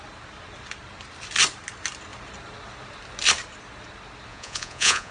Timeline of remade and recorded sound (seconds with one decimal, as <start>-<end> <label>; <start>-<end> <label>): 0.0-4.3 recorded; 4.3-5.1 remade